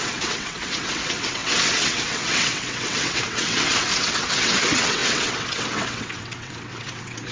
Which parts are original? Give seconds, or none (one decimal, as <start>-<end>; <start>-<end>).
none